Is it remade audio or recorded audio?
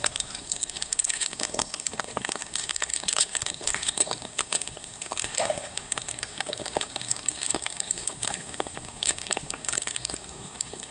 remade